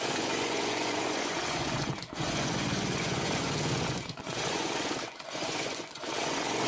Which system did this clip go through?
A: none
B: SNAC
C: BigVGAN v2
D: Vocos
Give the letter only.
D